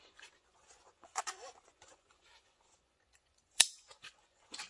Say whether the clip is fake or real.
fake